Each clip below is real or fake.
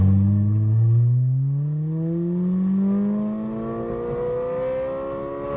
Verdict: real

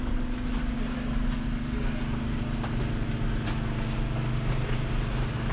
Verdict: real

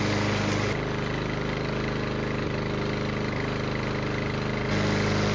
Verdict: real